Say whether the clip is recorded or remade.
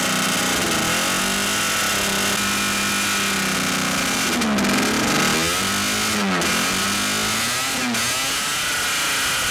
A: recorded